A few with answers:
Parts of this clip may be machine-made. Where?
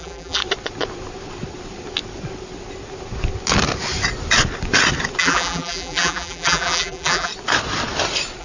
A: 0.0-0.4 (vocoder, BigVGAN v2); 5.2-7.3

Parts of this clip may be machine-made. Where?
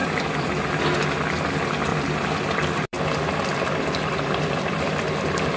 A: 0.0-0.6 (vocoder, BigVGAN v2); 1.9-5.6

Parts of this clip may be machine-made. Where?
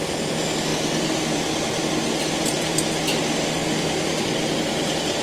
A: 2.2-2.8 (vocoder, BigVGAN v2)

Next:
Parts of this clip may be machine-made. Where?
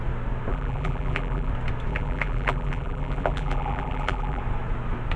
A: 0.5-1.5 (vocoder, BigVGAN v2); 1.9-4.4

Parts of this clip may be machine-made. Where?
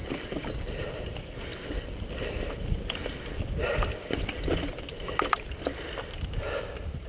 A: 0.0-1.1 (vocoder, BigVGAN v2); 1.5-2.1